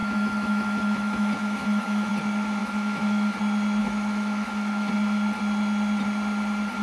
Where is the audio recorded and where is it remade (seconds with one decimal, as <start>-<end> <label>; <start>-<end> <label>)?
0.0-2.1 remade; 2.1-2.6 recorded; 2.6-3.4 remade; 3.4-3.8 recorded; 3.8-4.9 remade; 4.9-6.8 recorded